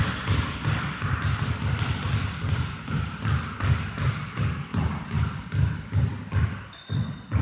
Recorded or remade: recorded